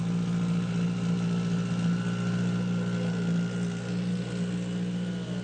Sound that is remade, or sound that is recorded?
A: recorded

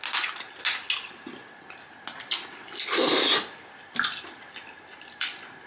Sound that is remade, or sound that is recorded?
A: recorded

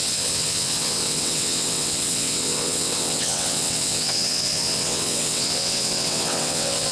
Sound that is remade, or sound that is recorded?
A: remade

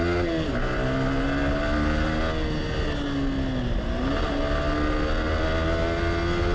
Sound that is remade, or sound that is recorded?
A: recorded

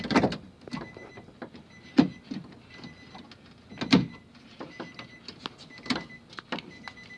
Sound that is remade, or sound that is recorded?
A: recorded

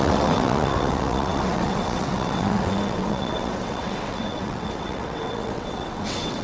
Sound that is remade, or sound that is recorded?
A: remade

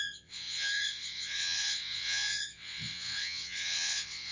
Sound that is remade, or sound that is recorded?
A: remade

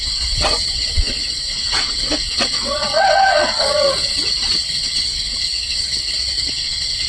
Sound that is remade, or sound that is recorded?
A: remade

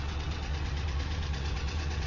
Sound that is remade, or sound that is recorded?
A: remade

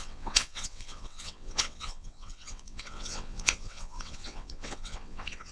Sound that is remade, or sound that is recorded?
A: remade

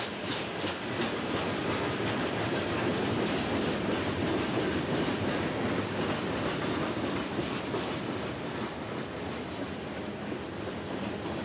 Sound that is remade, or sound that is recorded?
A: recorded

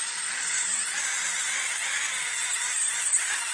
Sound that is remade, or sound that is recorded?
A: recorded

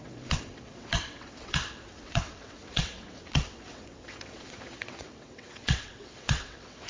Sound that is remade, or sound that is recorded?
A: remade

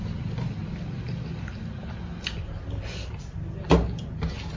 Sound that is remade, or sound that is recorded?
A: recorded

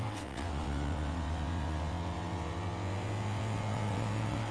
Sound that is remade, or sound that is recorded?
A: remade